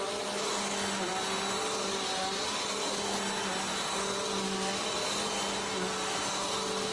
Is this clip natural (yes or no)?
yes